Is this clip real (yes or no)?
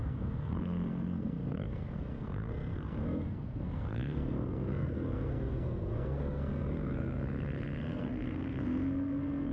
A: no